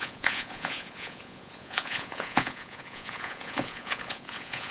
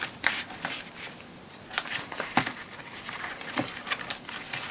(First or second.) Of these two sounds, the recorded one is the second